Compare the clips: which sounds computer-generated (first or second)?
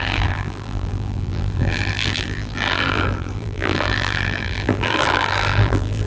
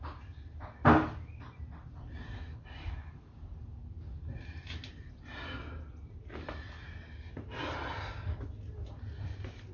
first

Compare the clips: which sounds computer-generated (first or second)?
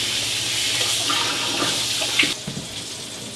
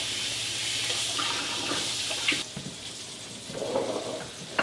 second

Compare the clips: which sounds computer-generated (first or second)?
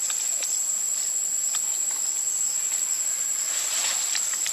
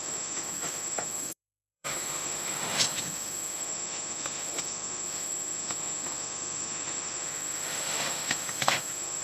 second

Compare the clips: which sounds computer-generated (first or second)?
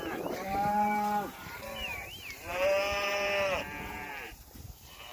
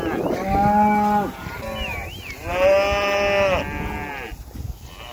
first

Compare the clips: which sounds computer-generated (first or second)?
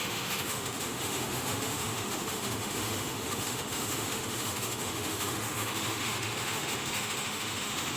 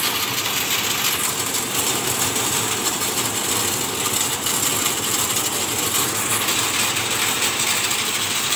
first